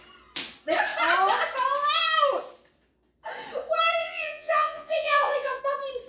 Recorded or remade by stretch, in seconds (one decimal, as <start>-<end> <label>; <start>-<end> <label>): 0.0-4.0 recorded; 4.0-5.6 remade; 5.6-6.1 recorded

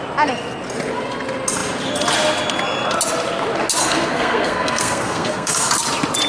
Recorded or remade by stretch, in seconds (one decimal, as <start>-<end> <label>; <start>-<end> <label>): 0.0-3.8 recorded; 3.8-5.7 remade; 5.7-6.3 recorded

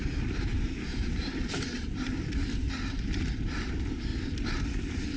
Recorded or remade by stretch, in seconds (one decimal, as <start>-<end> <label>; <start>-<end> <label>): 0.0-4.1 remade; 4.1-5.2 recorded

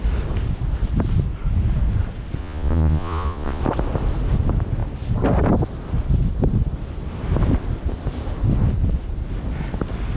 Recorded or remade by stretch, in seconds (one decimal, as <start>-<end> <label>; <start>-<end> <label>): 0.0-2.4 recorded; 2.4-3.6 remade; 3.6-10.2 recorded

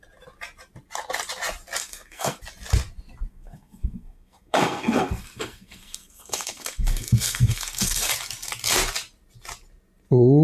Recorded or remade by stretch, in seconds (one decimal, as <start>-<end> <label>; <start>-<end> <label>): 0.0-1.8 recorded; 1.8-2.4 remade; 2.4-3.3 recorded; 3.3-8.1 remade; 8.1-10.4 recorded